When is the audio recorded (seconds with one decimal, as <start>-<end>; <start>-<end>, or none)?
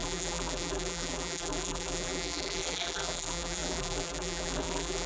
none